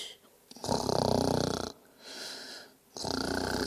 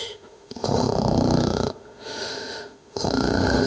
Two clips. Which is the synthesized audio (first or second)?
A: second